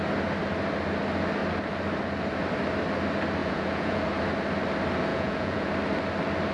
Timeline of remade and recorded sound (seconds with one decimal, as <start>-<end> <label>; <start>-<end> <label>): 0.0-3.4 recorded; 3.4-4.0 remade; 4.0-5.1 recorded; 5.1-5.7 remade; 5.7-6.5 recorded